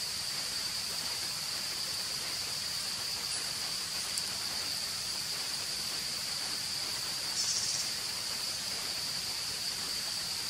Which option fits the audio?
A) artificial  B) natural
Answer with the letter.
A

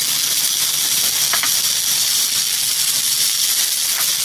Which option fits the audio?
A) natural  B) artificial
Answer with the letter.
A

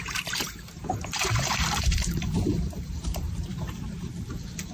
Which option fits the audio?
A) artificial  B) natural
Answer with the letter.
A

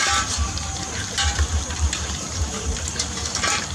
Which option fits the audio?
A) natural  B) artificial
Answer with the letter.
B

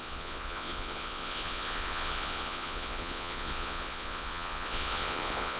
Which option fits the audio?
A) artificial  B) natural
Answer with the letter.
A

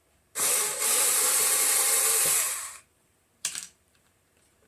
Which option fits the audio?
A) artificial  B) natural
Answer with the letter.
A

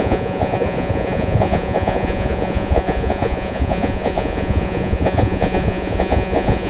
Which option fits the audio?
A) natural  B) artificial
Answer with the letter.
B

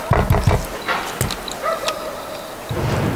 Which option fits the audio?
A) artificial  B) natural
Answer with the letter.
B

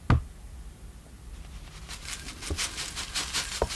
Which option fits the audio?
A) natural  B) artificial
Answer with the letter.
A